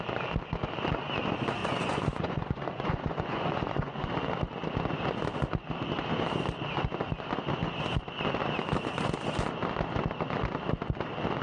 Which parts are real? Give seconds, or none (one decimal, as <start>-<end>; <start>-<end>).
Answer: 0.0-1.6; 4.1-11.4